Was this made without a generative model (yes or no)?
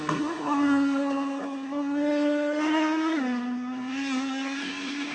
no